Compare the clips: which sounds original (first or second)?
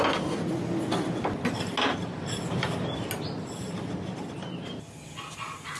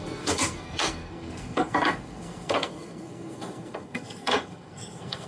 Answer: first